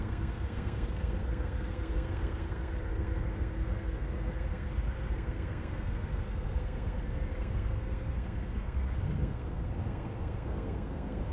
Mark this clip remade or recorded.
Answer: remade